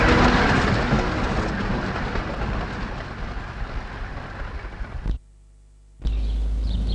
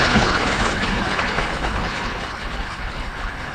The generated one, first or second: second